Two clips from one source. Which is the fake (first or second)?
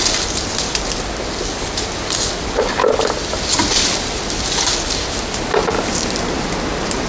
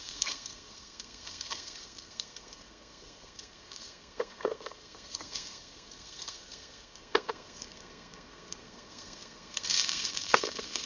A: second